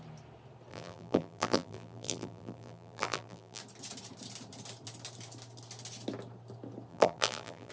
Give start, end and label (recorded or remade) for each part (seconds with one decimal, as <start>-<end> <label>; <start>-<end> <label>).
0.0-0.7 recorded; 0.7-3.6 remade; 3.6-6.9 recorded; 6.9-7.7 remade